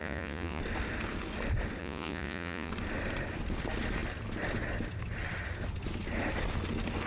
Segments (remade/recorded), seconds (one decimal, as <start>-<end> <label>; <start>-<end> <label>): 0.0-0.6 remade; 0.6-1.8 recorded; 1.8-2.7 remade; 2.7-7.1 recorded